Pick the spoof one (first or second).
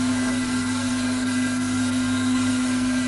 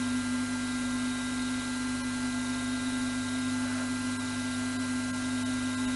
first